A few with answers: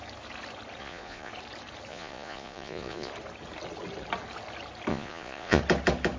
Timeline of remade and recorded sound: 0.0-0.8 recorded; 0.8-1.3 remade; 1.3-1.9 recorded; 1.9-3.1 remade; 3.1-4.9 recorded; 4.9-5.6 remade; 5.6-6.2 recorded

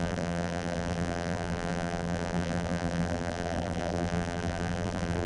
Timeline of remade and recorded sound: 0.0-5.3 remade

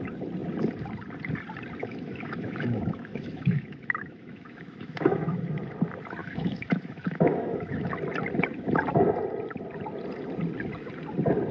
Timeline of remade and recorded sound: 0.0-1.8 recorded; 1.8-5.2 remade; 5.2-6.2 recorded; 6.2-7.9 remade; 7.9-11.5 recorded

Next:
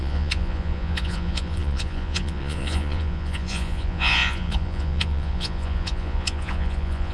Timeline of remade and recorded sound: 0.0-7.1 remade

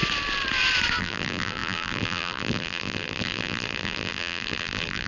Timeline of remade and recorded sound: 0.0-1.0 recorded; 1.0-5.1 remade